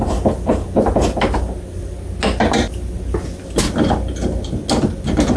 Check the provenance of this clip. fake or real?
real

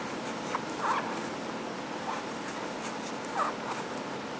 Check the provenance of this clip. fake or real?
real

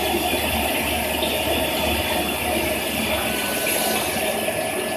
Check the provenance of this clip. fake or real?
real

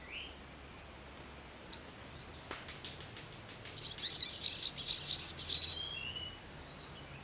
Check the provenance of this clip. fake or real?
real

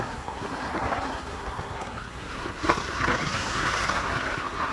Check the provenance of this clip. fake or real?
fake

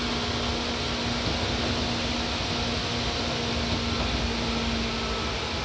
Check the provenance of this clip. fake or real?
real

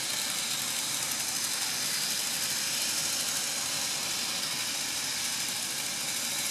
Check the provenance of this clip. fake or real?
real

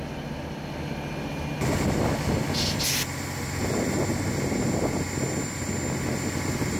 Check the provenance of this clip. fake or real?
real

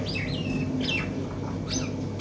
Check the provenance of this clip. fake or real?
real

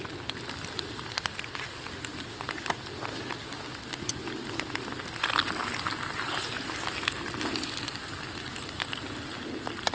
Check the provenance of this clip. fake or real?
real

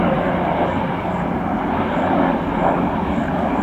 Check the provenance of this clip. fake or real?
real